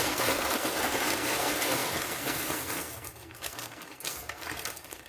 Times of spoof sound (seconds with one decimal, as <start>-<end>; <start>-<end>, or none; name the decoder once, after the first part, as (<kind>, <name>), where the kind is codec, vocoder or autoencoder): 0.0-5.1 (codec, SNAC)